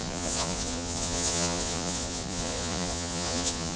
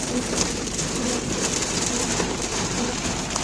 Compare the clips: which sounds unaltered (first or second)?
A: second